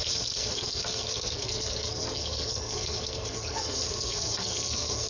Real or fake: fake